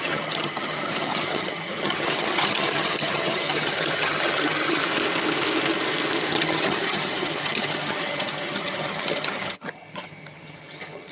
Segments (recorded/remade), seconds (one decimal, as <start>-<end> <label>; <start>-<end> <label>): 0.0-4.8 remade; 4.8-6.3 recorded; 6.3-11.1 remade